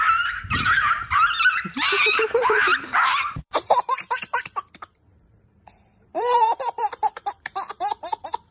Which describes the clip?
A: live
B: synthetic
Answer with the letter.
B